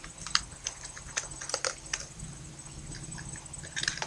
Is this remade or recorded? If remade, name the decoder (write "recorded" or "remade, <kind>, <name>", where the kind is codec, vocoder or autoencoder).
remade, vocoder, BigVGAN v2